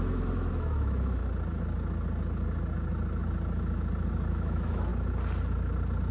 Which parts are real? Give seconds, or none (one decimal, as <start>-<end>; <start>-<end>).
1.2-4.3; 4.9-6.1